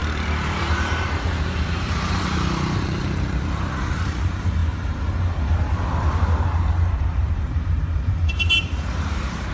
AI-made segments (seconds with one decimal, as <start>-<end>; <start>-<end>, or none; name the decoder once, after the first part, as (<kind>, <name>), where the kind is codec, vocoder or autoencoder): 0.7-4.6 (vocoder, BigVGAN v2); 7.2-9.5